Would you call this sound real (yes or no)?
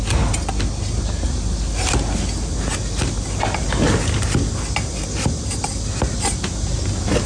yes